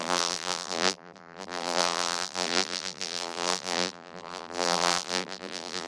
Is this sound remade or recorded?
remade